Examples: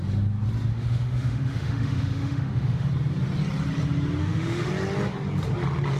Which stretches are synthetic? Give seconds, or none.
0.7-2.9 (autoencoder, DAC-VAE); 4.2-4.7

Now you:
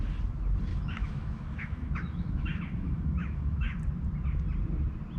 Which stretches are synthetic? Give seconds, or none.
0.7-3.8 (autoencoder, DAC-VAE)

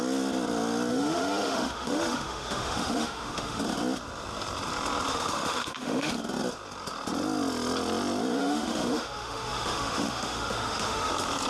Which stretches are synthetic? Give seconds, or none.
0.9-3.6 (autoencoder, DAC-VAE); 5.1-6.1; 8.4-11.1

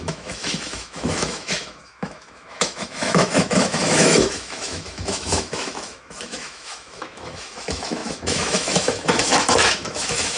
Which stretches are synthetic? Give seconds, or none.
0.0-10.4 (autoencoder, DAC-VAE)

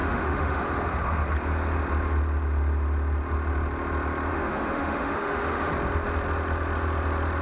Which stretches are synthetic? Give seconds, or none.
0.0-0.6 (autoencoder, DAC-VAE); 4.3-5.7